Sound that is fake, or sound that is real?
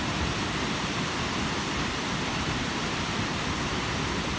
real